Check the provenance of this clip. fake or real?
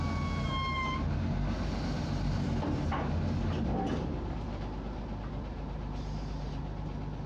real